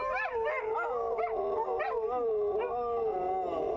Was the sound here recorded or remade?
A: recorded